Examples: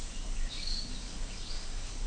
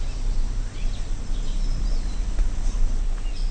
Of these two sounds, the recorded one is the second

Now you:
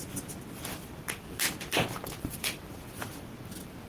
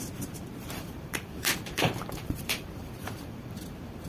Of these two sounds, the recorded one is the first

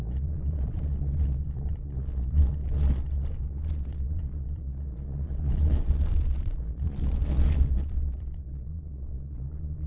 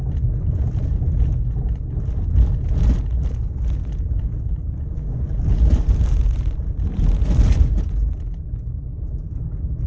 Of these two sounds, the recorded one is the second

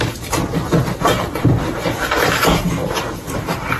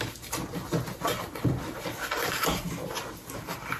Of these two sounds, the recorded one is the second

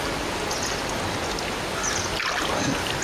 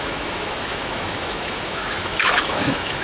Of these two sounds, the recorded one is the first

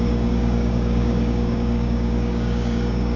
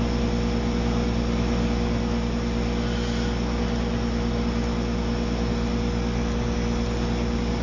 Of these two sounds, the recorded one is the second